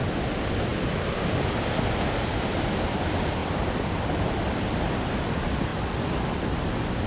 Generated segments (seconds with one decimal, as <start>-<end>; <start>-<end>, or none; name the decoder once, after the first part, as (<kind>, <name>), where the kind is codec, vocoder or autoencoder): 0.7-1.6 (vocoder, BigVGAN v2); 3.4-4.3